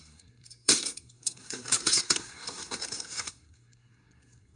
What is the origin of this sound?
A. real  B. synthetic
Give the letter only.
B